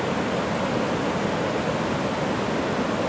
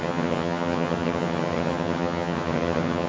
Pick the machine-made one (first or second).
second